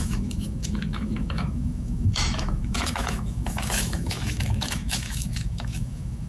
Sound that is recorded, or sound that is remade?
remade